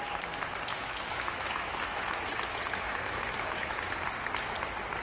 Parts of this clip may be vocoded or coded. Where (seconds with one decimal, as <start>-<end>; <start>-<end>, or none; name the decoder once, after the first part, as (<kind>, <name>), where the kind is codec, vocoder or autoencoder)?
0.7-3.7 (autoencoder, DAC-VAE)